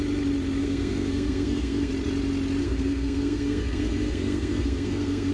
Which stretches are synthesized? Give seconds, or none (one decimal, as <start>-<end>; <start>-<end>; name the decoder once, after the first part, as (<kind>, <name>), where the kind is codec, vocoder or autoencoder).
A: 0.6-1.9 (codec, SNAC); 2.6-5.3